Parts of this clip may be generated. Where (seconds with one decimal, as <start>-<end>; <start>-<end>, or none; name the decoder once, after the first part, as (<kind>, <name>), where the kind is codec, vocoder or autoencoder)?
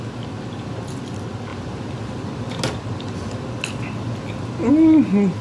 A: none